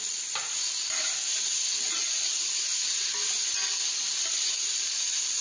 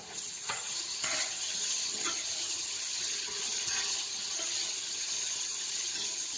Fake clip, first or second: second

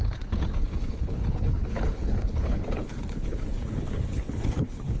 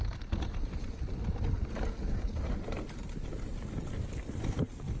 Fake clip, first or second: first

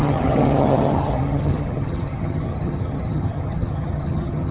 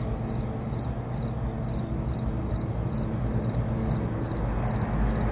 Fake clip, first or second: first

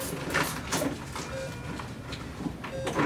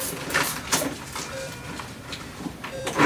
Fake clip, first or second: second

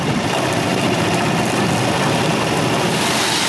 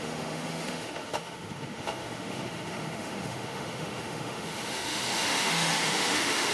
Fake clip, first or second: second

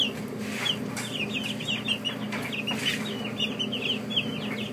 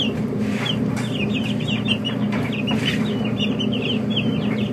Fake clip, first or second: second